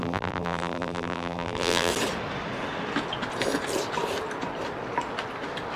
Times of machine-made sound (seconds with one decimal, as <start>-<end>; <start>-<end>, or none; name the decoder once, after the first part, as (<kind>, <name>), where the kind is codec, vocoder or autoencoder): 0.0-1.9 (vocoder, BigVGAN v2)